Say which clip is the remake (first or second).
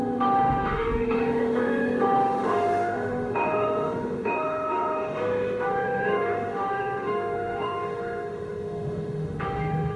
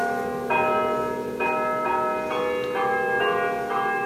first